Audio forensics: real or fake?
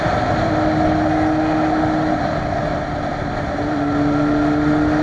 real